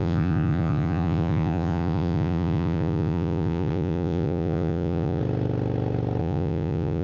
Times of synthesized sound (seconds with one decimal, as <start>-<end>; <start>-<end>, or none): 0.0-5.2; 6.2-7.0